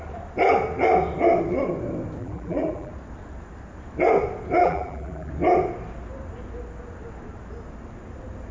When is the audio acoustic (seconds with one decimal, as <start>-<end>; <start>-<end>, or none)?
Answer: 0.0-2.2; 2.9-4.6; 5.3-8.5